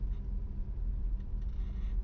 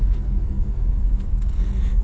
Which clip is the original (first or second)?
first